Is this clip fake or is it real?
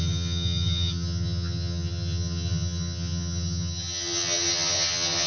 fake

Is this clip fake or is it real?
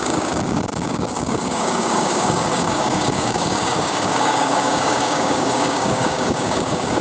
fake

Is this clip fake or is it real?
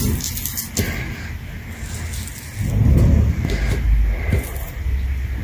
real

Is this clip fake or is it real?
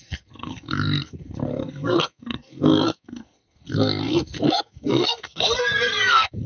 fake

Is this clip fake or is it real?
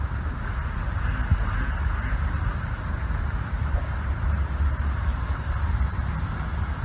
real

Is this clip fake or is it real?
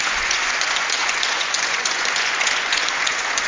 fake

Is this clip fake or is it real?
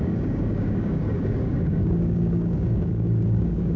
fake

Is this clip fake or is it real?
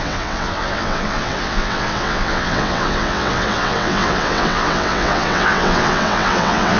fake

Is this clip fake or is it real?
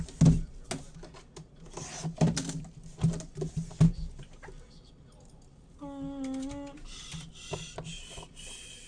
real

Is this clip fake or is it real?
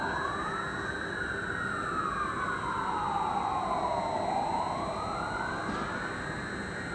real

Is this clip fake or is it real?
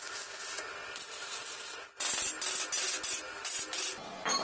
real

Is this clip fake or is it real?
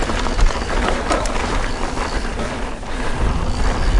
real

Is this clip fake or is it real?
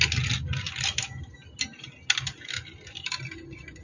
real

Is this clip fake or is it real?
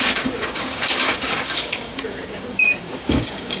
fake